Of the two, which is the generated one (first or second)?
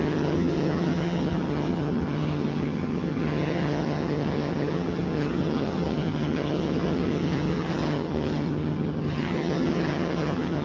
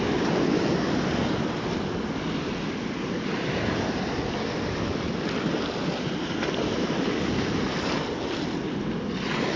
first